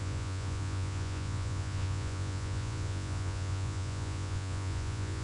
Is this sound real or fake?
fake